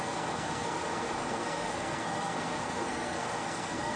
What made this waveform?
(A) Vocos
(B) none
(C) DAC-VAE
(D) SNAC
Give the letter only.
D